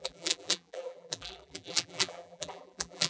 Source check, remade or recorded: remade